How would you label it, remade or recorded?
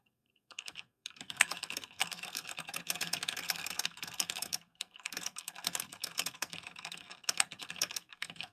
remade